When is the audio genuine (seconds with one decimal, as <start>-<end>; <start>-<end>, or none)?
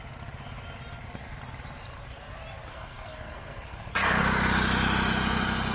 0.0-2.7; 4.2-5.7